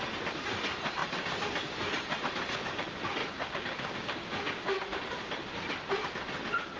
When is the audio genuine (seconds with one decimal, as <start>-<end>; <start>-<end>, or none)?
0.0-3.2; 5.0-6.8